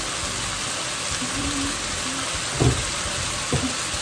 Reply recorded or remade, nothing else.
recorded